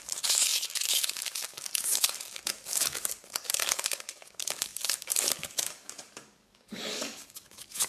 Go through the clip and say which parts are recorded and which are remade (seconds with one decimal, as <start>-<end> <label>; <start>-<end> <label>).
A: 0.0-7.9 remade